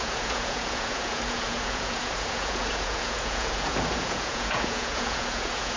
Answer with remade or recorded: remade